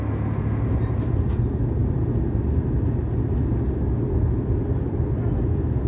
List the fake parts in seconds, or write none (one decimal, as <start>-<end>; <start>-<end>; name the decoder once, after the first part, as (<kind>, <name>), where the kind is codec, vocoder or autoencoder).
none

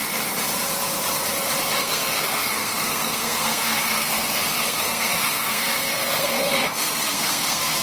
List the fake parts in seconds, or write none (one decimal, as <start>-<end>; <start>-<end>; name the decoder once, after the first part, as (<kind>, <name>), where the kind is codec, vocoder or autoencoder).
1.8-7.8 (codec, SNAC)

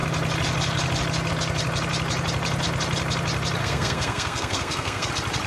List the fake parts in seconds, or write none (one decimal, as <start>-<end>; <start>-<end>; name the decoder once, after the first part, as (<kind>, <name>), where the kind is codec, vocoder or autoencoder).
3.6-5.1 (codec, SNAC)

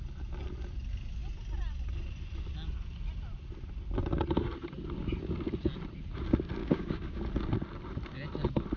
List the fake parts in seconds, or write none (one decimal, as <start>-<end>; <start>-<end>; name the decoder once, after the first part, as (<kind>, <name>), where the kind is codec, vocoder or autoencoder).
6.6-7.2 (codec, DAC)

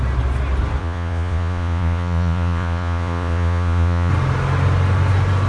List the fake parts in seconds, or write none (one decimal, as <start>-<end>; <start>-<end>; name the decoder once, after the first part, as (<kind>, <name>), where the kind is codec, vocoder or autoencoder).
0.8-4.1 (vocoder, Vocos)

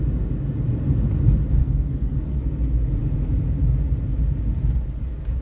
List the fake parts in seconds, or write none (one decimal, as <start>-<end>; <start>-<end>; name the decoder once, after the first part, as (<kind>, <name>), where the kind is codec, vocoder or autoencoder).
1.6-2.4 (codec, SNAC)

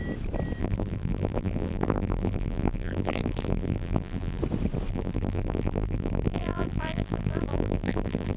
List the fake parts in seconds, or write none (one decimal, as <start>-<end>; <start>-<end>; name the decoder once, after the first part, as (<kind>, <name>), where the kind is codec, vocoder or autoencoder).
0.6-4.4 (vocoder, BigVGAN v2); 4.9-8.4